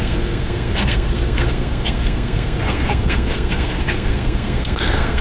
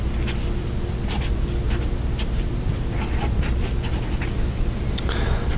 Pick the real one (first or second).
second